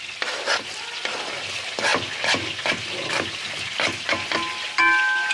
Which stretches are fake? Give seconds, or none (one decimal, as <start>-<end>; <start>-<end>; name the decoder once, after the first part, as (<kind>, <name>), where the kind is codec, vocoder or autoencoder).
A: none